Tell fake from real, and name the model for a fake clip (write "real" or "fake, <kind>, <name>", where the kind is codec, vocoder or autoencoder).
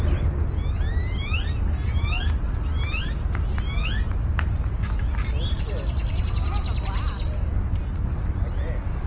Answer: real